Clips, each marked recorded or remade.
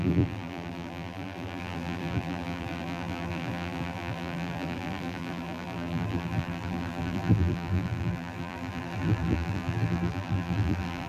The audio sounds remade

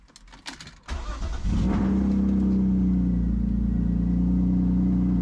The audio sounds recorded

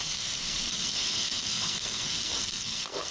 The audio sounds remade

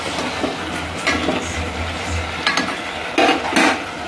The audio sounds recorded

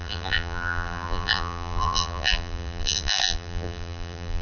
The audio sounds remade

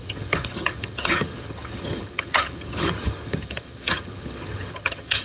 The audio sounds remade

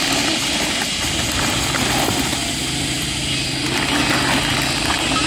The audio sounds recorded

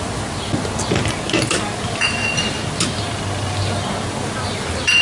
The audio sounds recorded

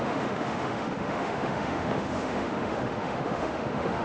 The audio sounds remade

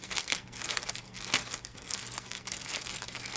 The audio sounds remade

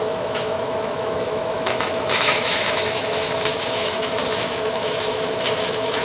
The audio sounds remade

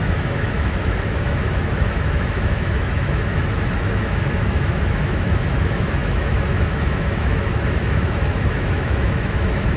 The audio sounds remade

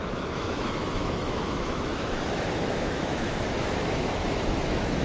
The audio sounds remade